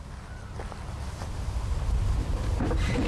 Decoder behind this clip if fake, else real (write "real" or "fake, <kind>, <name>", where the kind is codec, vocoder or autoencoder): real